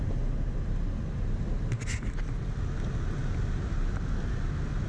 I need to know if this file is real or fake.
real